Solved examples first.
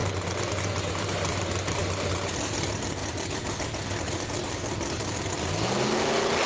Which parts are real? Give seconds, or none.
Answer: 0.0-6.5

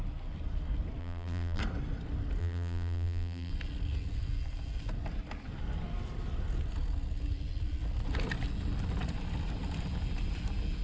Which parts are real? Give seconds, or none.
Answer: 0.0-1.0; 1.6-2.4; 3.5-10.8

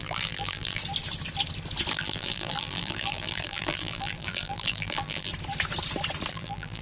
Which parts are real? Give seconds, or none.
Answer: 0.8-1.9; 5.3-6.3

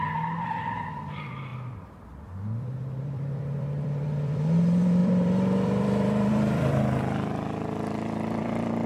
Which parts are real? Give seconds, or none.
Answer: none